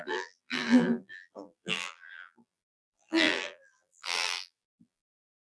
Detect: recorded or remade remade